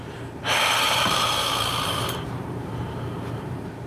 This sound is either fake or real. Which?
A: fake